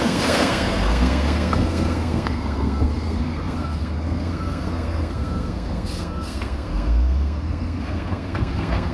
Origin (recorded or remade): remade